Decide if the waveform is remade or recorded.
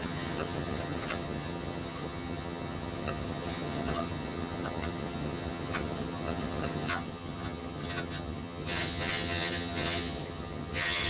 remade